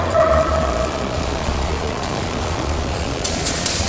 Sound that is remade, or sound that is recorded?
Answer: remade